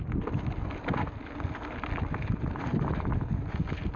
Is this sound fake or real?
real